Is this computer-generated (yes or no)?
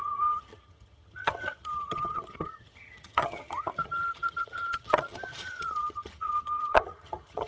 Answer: yes